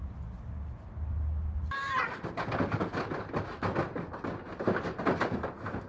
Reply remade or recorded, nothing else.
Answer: recorded